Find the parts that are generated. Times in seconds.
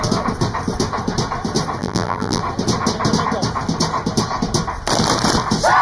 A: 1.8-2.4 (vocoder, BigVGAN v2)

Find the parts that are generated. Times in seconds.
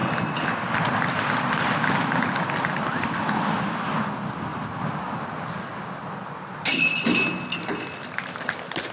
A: 0.0-2.3 (vocoder, BigVGAN v2); 6.9-7.5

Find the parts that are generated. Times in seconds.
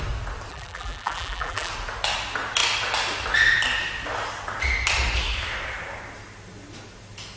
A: 0.5-1.7 (vocoder, BigVGAN v2)